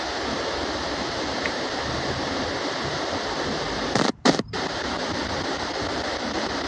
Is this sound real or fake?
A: fake